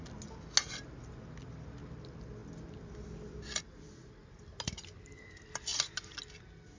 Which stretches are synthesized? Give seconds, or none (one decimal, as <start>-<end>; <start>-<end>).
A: none

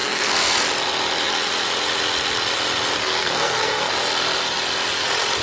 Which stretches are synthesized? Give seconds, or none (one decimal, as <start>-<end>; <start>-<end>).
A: 0.0-0.5; 3.0-3.9

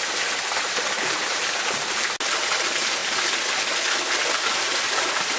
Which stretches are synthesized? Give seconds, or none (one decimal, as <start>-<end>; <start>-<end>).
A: 3.0-3.5

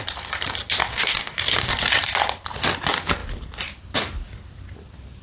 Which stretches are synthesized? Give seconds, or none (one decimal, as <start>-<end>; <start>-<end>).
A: 0.9-1.7

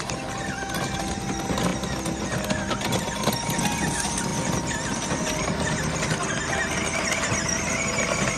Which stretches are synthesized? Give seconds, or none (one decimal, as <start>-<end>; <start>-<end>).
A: none

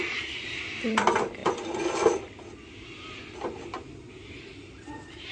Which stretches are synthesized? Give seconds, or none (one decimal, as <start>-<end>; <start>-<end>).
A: 0.0-1.4; 4.1-5.3

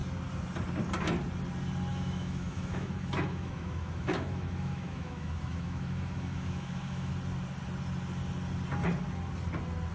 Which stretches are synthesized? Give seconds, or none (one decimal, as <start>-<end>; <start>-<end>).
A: 1.9-7.1